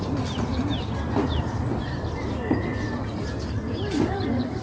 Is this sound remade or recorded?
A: recorded